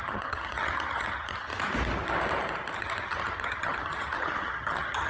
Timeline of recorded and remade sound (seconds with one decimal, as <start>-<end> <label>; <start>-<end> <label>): 0.0-1.5 remade; 1.5-2.8 recorded; 2.8-5.1 remade